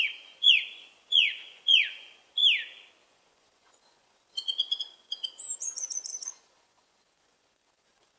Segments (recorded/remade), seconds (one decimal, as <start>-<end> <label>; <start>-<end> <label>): 0.0-2.4 remade; 2.4-3.1 recorded; 3.1-8.2 remade